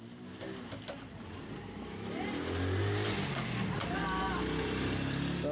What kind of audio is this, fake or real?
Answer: real